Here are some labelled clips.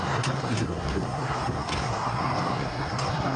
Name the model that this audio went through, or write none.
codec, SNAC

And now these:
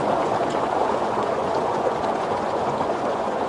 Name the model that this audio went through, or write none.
vocoder, Vocos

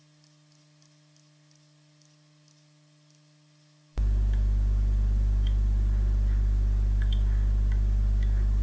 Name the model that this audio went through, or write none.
none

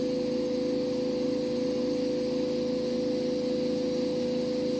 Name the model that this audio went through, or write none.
none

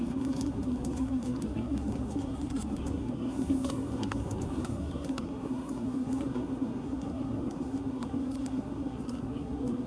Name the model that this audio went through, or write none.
codec, SNAC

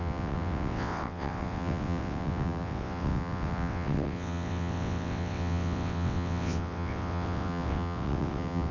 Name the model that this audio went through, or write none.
vocoder, WaveNeXt